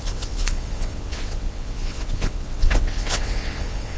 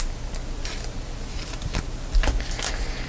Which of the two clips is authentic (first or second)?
second